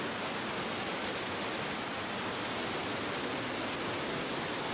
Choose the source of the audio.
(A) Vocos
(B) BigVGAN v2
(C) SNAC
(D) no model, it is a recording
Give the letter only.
D